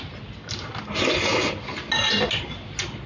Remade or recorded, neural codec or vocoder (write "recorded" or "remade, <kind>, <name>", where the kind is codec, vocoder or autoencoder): recorded